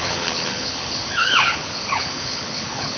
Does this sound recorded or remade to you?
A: remade